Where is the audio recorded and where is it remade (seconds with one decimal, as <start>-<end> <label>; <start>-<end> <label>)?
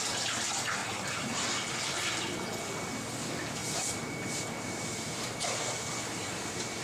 0.0-0.8 recorded; 0.8-2.3 remade; 2.3-3.6 recorded; 3.6-6.8 remade